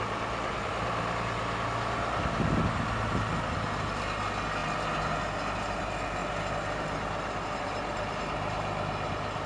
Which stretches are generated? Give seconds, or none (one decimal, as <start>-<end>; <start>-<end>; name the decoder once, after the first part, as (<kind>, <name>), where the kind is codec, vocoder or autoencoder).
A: none